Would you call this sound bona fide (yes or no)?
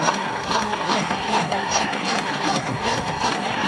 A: no